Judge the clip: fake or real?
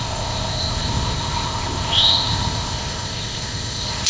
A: fake